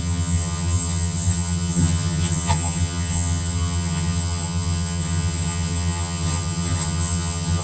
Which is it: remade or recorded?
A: remade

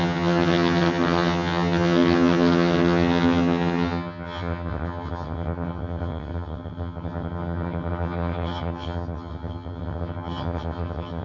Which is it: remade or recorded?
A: remade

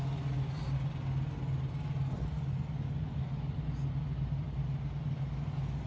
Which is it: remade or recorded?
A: recorded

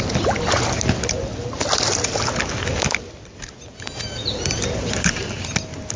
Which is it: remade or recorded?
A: recorded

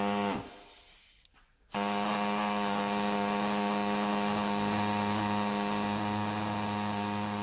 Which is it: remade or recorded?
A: recorded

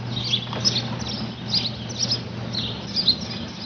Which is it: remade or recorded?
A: recorded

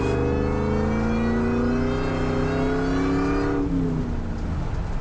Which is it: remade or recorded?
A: recorded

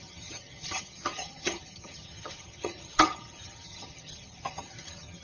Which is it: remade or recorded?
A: remade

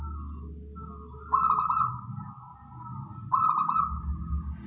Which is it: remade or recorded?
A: recorded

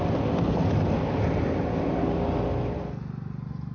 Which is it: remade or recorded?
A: recorded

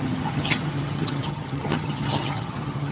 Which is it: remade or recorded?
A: remade